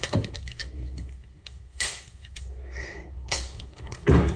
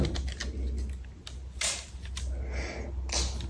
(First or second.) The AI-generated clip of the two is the first